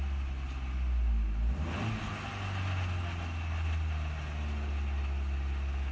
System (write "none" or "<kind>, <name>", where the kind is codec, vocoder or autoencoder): none